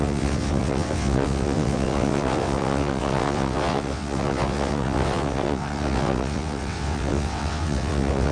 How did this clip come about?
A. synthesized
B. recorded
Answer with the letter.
A